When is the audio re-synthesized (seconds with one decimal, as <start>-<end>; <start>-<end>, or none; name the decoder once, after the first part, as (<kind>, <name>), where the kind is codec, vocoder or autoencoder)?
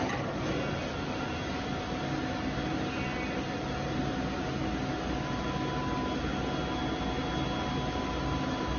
none